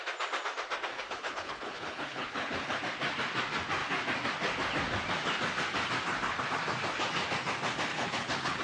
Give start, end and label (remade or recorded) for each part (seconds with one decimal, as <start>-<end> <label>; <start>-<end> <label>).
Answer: 0.0-0.9 recorded; 0.9-2.8 remade; 2.8-7.9 recorded; 7.9-8.6 remade